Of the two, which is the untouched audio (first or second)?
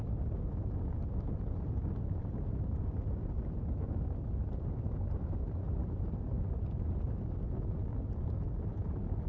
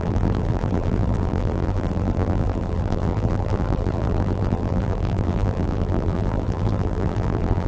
first